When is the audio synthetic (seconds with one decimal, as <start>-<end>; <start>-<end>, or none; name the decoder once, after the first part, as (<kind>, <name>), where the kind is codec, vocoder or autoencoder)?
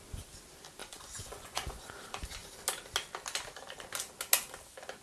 0.8-2.0 (vocoder, Vocos)